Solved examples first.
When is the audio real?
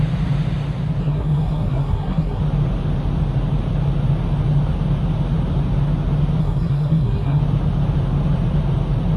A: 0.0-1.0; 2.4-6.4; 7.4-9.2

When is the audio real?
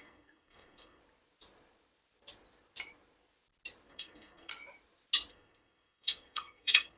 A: 1.0-3.9; 4.5-5.3